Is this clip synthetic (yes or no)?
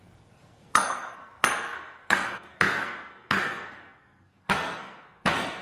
yes